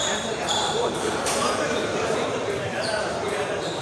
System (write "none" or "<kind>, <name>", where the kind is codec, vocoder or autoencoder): vocoder, BigVGAN v2